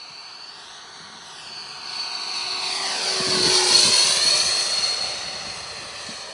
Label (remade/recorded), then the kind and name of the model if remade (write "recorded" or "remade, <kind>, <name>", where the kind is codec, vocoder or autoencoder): recorded